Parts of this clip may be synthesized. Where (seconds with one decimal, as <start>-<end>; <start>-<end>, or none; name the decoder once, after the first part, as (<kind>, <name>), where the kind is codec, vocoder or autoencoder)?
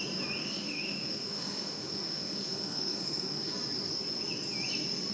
0.4-3.5 (autoencoder, DAC-VAE)